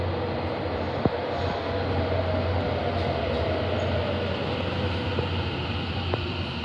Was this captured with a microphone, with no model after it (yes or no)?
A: yes